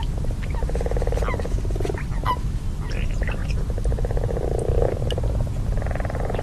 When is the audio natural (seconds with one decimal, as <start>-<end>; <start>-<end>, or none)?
0.0-3.4; 4.8-6.4